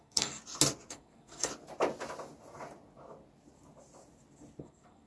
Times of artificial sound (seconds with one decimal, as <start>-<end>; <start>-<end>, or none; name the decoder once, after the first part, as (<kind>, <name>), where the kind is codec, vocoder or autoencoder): 0.0-0.4 (codec, SNAC); 0.9-1.5; 4.6-5.1